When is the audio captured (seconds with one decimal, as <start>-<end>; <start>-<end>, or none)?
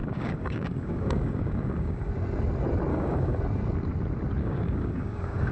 2.1-2.9; 3.4-4.4